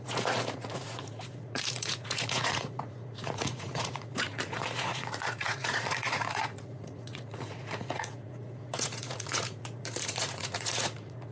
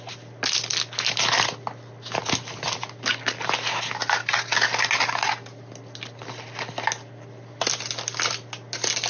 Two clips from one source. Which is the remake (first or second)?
first